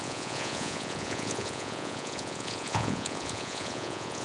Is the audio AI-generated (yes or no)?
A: yes